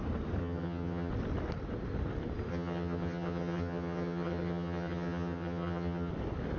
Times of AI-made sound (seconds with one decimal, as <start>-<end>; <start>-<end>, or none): 0.4-1.1; 2.5-6.1